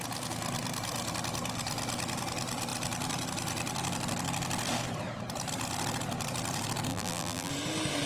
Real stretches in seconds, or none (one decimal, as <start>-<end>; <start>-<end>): 0.0-6.9; 7.5-8.1